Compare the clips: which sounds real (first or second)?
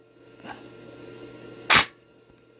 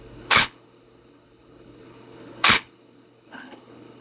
first